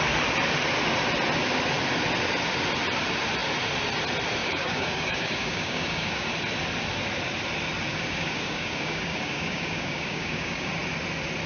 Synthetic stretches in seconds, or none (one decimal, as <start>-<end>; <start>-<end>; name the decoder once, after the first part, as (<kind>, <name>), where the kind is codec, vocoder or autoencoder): 4.4-6.3 (codec, DAC); 7.9-10.7